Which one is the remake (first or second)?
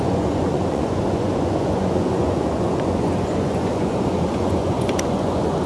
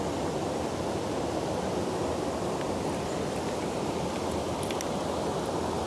first